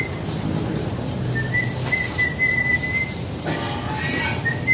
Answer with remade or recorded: recorded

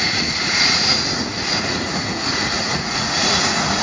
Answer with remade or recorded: remade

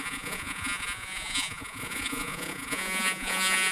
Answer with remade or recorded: remade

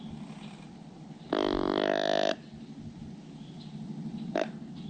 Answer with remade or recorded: recorded